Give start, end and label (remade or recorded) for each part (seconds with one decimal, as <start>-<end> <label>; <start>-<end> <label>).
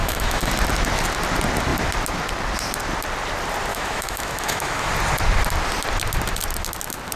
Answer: 0.0-0.5 remade; 0.5-3.7 recorded; 3.7-4.9 remade; 4.9-7.2 recorded